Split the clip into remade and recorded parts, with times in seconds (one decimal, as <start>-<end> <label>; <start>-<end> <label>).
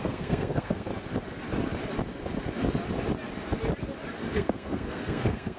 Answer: 0.0-0.9 remade; 0.9-4.3 recorded; 4.3-5.6 remade